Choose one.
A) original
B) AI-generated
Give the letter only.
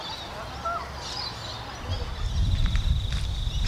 A